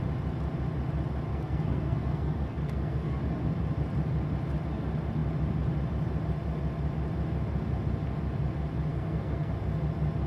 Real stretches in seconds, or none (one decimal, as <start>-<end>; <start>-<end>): 0.0-1.3; 3.2-8.9; 9.5-10.3